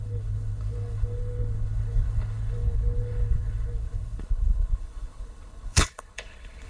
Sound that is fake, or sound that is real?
fake